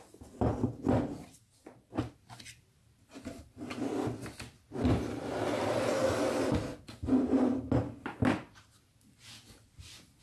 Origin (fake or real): real